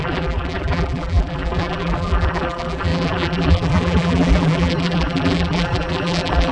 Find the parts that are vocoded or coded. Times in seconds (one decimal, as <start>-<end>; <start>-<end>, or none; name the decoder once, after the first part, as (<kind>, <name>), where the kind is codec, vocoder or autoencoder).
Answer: 0.0-6.5 (vocoder, BigVGAN v2)